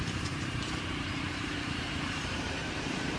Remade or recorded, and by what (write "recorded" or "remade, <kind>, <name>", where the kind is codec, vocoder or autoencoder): remade, vocoder, BigVGAN v2